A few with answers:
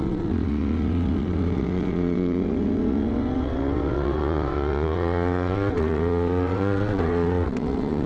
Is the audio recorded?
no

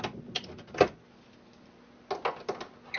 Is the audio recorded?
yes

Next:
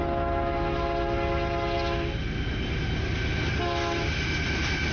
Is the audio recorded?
yes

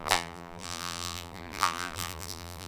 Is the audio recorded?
no